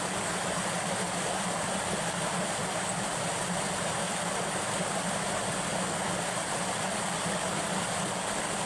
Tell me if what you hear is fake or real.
real